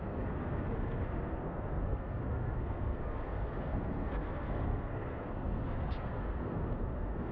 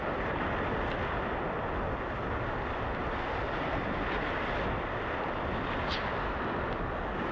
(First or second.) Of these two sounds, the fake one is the first